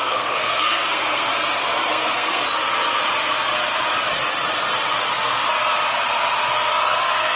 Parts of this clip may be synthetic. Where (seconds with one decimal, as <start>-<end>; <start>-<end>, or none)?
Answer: 0.0-1.3; 1.9-2.4; 6.8-7.4